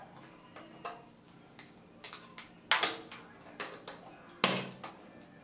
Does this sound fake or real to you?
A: real